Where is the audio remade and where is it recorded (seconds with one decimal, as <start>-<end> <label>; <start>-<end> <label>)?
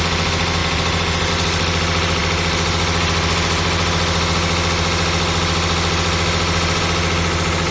0.0-0.6 recorded; 0.6-1.3 remade; 1.3-7.7 recorded